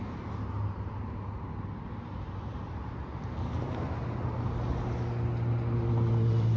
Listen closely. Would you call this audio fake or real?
real